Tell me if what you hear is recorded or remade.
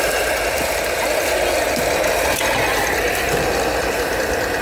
recorded